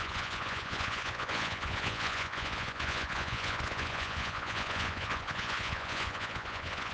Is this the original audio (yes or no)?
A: no